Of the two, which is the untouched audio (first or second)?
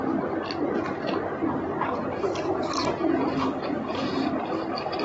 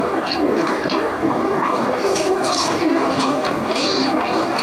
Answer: first